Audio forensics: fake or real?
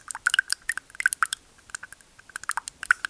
real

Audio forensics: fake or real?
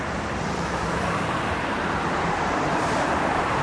fake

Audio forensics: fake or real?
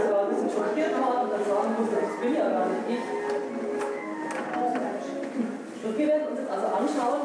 real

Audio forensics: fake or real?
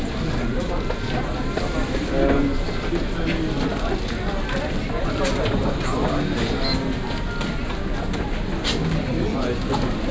real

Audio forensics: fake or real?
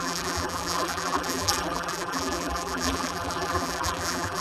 fake